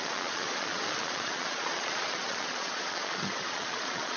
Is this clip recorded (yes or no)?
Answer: no